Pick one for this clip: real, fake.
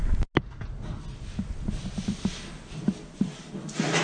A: real